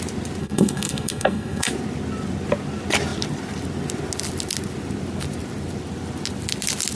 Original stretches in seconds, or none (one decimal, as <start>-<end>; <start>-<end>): 0.0-0.4; 1.7-7.0